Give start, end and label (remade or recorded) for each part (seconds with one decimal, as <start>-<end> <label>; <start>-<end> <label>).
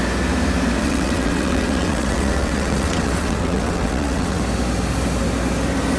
0.0-0.8 recorded; 0.8-4.4 remade; 4.4-6.0 recorded